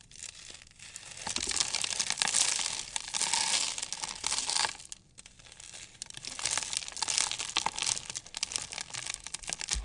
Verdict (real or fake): real